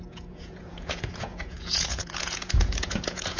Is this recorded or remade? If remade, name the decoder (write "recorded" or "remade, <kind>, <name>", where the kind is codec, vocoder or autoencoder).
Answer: remade, vocoder, Vocos